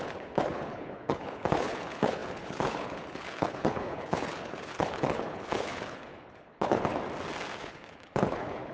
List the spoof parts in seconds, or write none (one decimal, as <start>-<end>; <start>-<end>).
0.0-6.9; 7.6-8.7

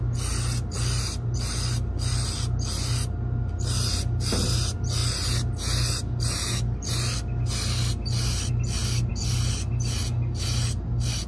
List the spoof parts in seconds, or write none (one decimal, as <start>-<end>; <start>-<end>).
none

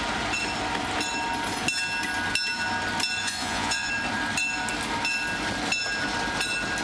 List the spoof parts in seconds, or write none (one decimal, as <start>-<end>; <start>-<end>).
3.2-3.9

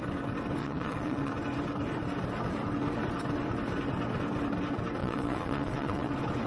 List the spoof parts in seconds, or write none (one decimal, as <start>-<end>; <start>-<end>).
0.6-1.3; 5.0-6.1

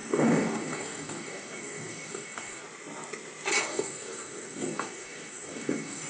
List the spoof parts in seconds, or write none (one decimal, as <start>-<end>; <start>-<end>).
0.0-2.6; 3.6-6.1

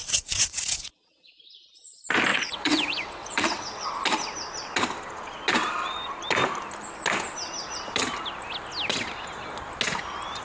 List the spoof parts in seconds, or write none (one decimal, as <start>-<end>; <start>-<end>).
0.0-1.3; 2.3-3.9

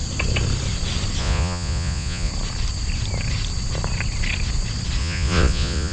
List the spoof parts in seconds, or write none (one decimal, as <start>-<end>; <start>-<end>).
1.2-2.3; 5.0-5.9

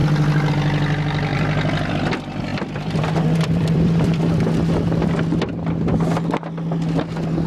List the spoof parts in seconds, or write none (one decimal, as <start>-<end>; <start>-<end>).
1.3-1.9; 2.5-4.2